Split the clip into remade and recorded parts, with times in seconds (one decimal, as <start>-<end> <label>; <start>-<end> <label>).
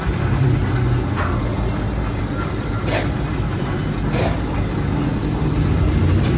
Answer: 0.0-0.6 remade; 0.6-2.2 recorded; 2.2-3.8 remade; 3.8-5.5 recorded; 5.5-6.4 remade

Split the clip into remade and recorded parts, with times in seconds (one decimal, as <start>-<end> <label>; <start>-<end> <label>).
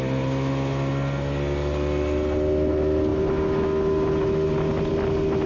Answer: 0.0-5.5 recorded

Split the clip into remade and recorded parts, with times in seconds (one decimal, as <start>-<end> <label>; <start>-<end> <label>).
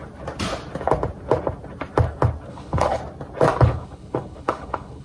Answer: 0.0-2.5 recorded; 2.5-3.0 remade; 3.0-3.6 recorded; 3.6-5.0 remade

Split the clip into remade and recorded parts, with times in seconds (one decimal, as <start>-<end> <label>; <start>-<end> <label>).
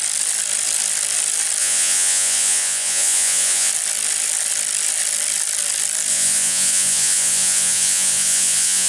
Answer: 0.0-1.6 recorded; 1.6-3.7 remade; 3.7-6.1 recorded; 6.1-8.9 remade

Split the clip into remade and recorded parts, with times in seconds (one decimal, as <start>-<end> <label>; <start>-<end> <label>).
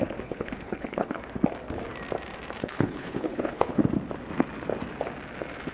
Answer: 0.0-1.2 remade; 1.2-2.6 recorded; 2.6-3.8 remade; 3.8-5.7 recorded